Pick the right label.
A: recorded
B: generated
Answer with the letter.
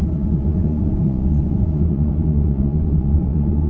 B